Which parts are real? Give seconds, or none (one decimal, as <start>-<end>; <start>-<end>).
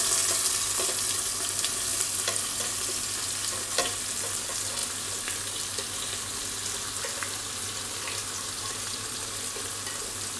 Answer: 0.0-10.4